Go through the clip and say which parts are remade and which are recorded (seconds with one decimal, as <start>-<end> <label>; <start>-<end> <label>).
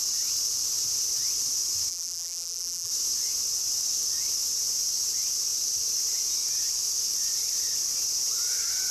0.0-1.9 recorded; 1.9-2.9 remade; 2.9-8.9 recorded